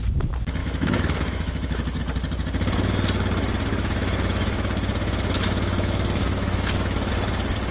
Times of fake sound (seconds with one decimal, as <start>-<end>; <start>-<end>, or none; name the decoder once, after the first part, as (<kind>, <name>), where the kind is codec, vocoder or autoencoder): 0.6-2.0 (autoencoder, DAC-VAE); 3.7-7.1